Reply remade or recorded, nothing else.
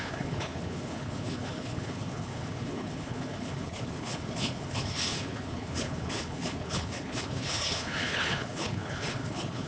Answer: remade